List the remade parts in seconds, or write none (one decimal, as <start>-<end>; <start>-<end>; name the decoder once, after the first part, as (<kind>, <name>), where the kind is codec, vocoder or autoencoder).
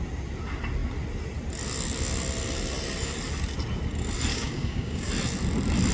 4.3-5.1 (codec, DAC)